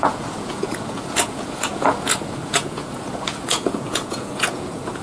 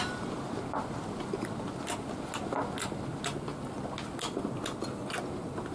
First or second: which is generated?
first